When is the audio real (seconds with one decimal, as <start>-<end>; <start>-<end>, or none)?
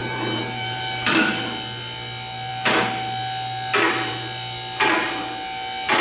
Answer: 1.4-6.0